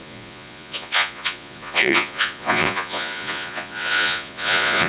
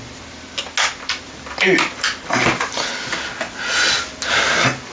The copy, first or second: first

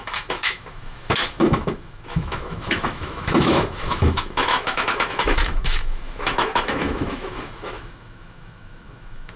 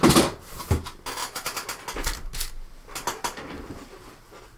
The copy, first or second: first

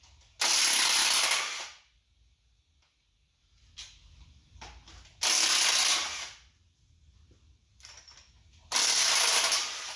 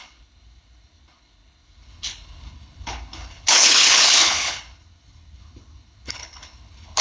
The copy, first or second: second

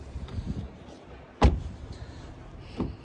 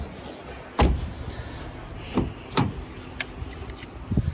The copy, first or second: first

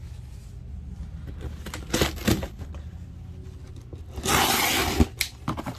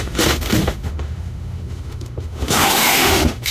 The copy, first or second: second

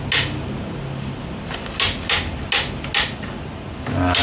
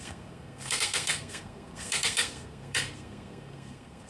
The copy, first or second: second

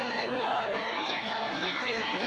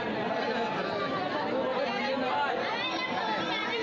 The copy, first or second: first